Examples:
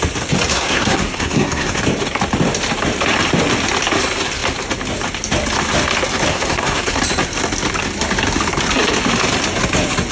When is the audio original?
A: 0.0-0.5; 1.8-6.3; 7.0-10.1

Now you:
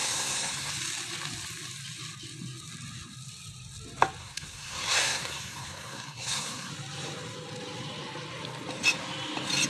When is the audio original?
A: 0.7-4.2; 6.7-9.7

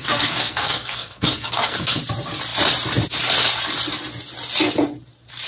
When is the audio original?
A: 2.0-5.5

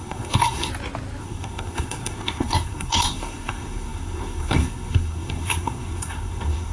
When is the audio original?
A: 0.7-1.2

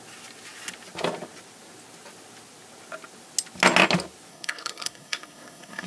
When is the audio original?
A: 0.0-4.3

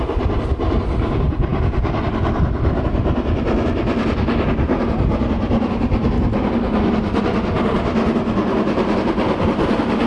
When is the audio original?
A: 0.0-10.1

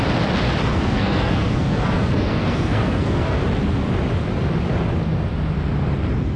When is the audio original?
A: 0.0-0.7; 3.4-6.4